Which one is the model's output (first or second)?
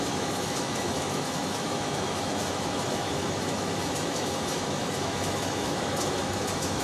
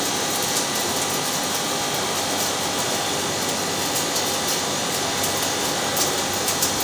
first